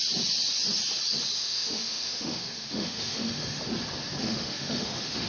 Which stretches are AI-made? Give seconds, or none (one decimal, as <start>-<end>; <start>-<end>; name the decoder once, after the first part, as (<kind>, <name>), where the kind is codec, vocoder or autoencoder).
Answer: 1.4-3.6 (autoencoder, DAC-VAE); 4.2-5.3